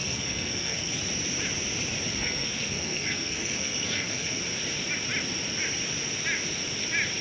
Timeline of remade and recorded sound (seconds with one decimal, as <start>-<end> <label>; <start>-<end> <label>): 0.0-1.0 remade; 1.0-2.1 recorded; 2.1-4.4 remade; 4.4-7.2 recorded